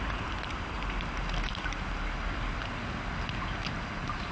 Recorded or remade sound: recorded